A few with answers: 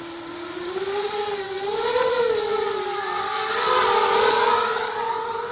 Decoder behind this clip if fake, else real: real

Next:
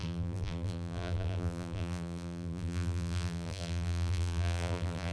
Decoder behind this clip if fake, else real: fake, vocoder, BigVGAN v2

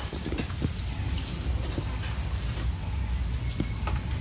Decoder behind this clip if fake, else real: real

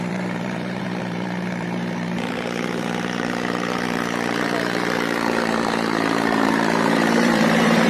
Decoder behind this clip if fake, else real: fake, vocoder, BigVGAN v2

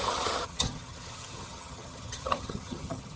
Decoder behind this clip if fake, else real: fake, vocoder, HiFi-GAN